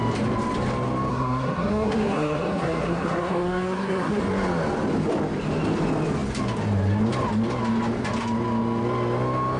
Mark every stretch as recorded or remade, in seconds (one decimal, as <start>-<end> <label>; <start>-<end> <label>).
0.0-1.1 recorded; 1.1-4.2 remade; 4.2-9.6 recorded